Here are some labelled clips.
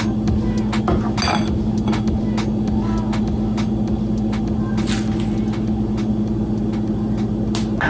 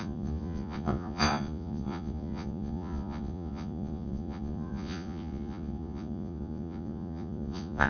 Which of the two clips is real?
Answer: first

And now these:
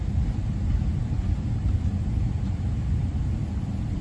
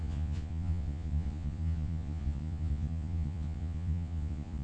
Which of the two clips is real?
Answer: first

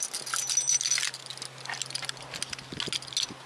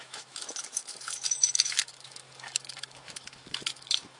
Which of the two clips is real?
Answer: first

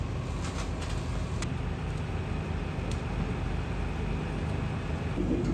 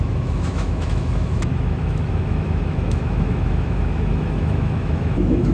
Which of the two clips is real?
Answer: first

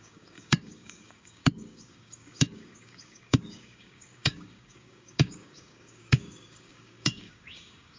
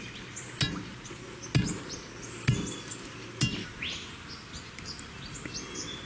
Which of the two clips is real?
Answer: second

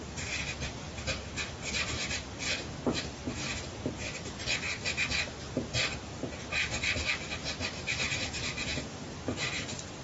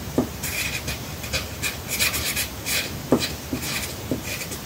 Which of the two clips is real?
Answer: first